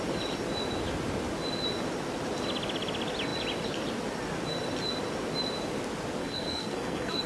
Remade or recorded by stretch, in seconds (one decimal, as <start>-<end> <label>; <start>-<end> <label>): 0.0-6.2 recorded; 6.2-7.3 remade

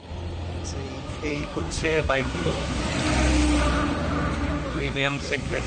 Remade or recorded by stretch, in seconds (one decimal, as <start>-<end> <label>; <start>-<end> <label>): 0.0-1.3 recorded; 1.3-2.8 remade; 2.8-4.7 recorded; 4.7-5.7 remade

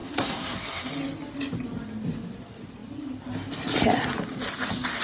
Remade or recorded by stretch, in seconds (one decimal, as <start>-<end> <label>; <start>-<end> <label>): 0.0-0.9 remade; 0.9-5.0 recorded

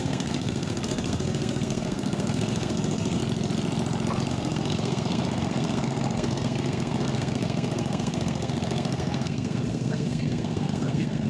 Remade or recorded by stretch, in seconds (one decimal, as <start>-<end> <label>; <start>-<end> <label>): 0.0-3.2 remade; 3.2-4.3 recorded; 4.3-11.3 remade

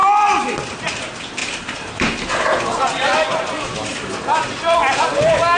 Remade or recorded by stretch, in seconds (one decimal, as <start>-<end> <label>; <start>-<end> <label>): 0.0-5.6 recorded

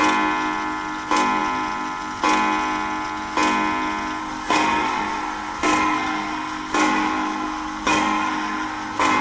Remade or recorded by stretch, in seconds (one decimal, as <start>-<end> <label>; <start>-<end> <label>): 0.0-4.2 recorded; 4.2-9.2 remade

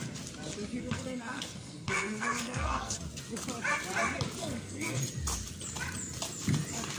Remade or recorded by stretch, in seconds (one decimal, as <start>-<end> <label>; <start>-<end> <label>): 0.0-0.8 recorded; 0.8-3.0 remade; 3.0-4.4 recorded; 4.4-5.0 remade; 5.0-7.0 recorded

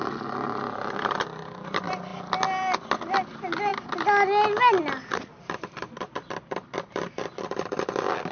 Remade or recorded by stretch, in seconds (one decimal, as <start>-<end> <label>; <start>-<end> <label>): 0.0-8.3 recorded